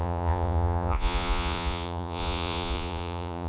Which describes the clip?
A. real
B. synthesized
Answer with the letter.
B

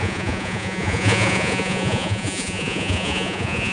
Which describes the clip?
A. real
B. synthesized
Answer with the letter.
B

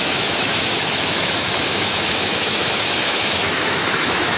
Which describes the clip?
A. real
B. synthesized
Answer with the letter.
B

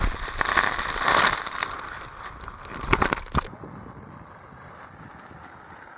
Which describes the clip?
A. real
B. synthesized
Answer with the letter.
A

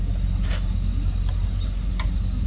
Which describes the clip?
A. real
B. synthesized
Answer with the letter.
A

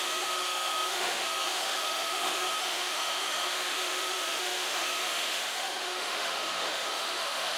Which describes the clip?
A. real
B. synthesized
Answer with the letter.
B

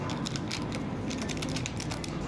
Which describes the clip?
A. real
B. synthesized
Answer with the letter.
A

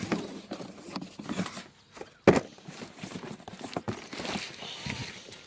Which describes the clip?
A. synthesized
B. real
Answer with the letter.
B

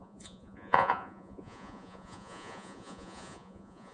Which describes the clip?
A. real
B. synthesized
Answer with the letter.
B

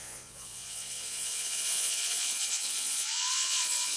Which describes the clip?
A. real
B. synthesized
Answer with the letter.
B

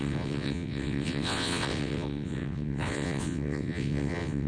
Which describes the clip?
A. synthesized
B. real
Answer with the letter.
A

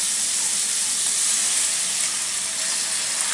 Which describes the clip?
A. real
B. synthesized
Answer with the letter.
A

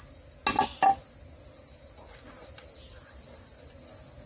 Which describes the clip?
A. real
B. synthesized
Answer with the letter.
A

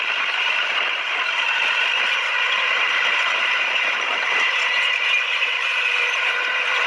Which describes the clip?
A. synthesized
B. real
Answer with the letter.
A